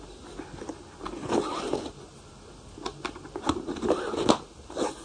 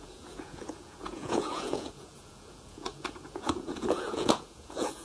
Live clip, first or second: first